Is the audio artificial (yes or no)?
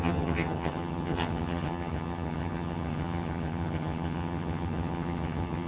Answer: yes